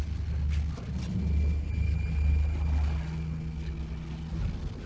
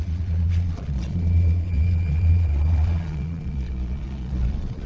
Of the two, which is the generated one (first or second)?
second